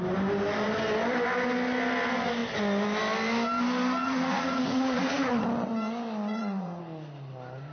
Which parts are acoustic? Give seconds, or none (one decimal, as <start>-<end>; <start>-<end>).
0.0-4.0; 5.4-6.3; 6.8-7.7